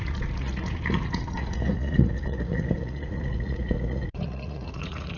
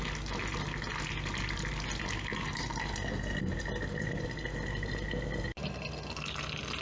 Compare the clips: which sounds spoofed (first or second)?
first